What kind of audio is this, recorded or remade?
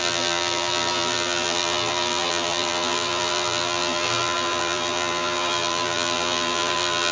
remade